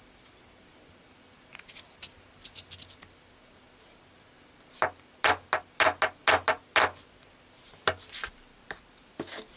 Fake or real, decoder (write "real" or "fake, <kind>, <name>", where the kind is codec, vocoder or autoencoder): real